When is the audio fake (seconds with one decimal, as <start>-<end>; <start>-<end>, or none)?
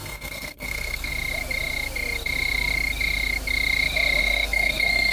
0.0-1.1; 4.2-5.1